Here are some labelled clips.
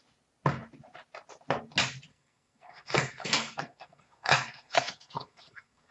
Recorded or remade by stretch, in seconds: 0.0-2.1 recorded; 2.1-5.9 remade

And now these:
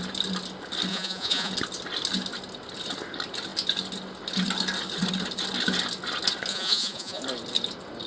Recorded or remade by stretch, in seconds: 0.0-0.9 recorded; 0.9-1.5 remade; 1.5-6.5 recorded; 6.5-7.2 remade; 7.2-8.1 recorded

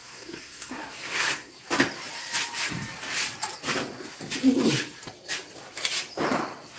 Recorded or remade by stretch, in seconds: 0.0-1.6 remade; 1.6-6.8 recorded

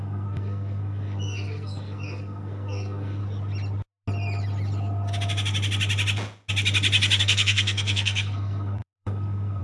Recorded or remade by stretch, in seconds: 0.0-3.2 remade; 3.2-7.2 recorded; 7.2-9.6 remade